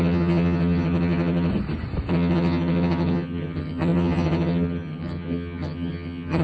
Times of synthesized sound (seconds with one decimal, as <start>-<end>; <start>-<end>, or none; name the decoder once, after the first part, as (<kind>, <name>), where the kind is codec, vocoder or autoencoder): 0.0-1.5 (vocoder, HiFi-GAN); 2.1-6.4